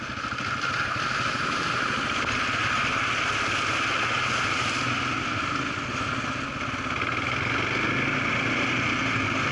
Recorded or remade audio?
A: recorded